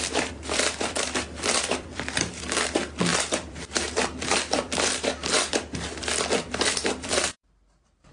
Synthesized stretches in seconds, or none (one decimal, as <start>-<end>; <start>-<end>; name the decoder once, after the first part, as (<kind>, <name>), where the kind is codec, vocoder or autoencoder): 0.0-8.1 (vocoder, BigVGAN v2)